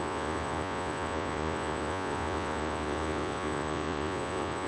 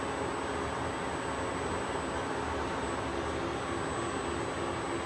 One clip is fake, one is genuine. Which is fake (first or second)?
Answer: first